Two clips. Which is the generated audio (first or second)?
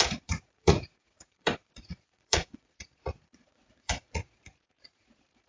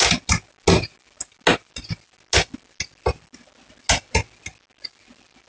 first